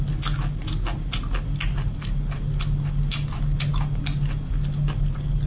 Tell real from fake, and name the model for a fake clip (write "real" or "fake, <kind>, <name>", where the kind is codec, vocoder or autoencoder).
real